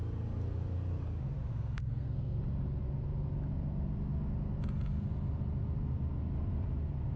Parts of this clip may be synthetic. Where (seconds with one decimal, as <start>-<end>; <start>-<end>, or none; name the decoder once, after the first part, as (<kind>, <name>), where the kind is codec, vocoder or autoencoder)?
1.5-2.4 (codec, SNAC)